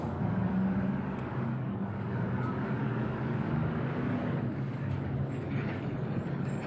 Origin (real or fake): fake